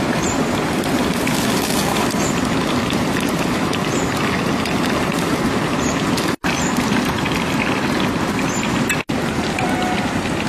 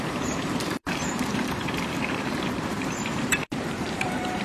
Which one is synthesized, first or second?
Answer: second